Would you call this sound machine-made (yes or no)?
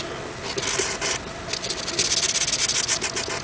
no